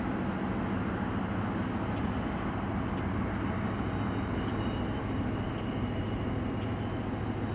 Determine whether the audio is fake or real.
real